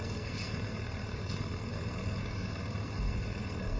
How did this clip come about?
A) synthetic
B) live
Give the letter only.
A